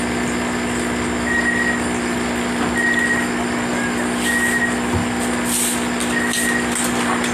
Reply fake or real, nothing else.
real